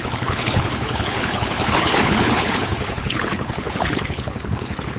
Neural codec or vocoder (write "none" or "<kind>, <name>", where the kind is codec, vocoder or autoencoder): codec, HILCodec